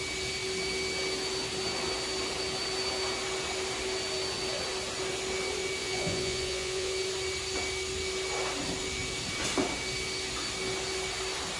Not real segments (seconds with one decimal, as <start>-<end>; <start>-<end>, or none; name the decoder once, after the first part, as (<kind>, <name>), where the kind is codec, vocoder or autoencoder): 5.8-6.9 (vocoder, Vocos)